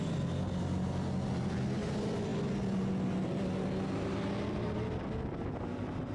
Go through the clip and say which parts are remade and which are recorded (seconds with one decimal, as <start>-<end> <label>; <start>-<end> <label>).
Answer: 0.0-6.1 recorded